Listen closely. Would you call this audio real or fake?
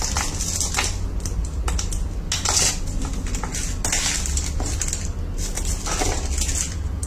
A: real